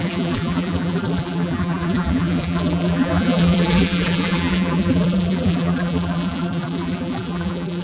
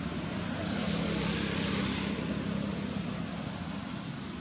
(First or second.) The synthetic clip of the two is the first